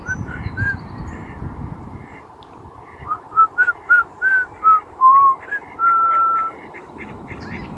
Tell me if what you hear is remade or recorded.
remade